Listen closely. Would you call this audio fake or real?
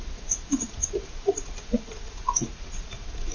fake